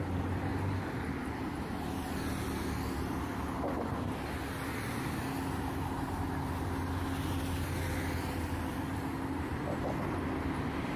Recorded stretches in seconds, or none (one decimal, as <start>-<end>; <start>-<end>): 0.0-11.0